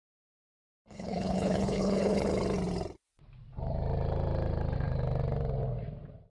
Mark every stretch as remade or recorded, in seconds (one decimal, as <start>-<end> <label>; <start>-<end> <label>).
0.0-2.3 remade; 2.3-6.3 recorded